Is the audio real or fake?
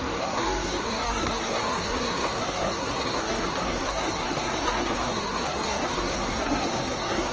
fake